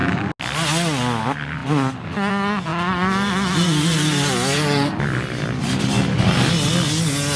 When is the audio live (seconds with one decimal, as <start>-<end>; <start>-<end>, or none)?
0.0-2.7; 5.8-7.4